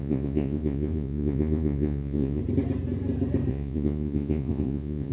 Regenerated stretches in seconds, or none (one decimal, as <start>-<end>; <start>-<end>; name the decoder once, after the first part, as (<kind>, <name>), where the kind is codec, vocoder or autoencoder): 0.0-2.4 (vocoder, Vocos); 3.5-5.1